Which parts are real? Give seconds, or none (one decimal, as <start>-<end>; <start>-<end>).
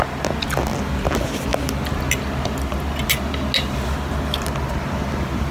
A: 0.0-5.5